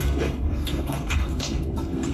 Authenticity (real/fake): fake